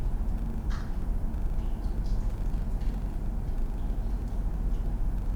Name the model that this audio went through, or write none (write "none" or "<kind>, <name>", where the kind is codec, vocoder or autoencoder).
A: none